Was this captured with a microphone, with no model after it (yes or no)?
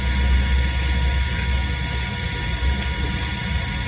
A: yes